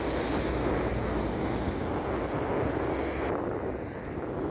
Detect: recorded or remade recorded